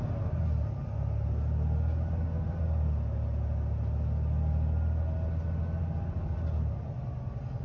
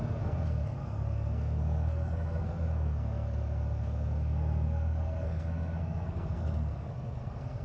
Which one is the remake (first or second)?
second